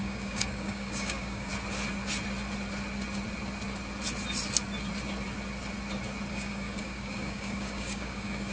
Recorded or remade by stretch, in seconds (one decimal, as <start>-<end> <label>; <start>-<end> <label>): 0.0-1.5 remade; 1.5-6.3 recorded; 6.3-8.5 remade